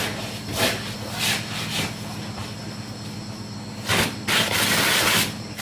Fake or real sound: real